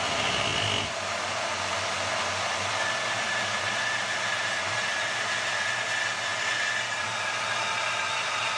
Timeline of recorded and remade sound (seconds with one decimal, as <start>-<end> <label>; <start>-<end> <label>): 0.0-8.6 recorded